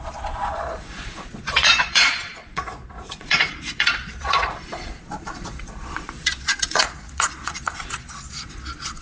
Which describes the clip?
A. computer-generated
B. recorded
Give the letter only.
A